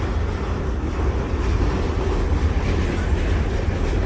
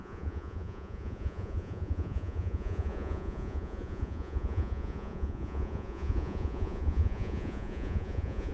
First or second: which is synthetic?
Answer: second